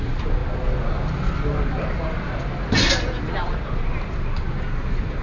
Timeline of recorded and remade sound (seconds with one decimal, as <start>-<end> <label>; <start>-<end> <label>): 0.0-5.2 recorded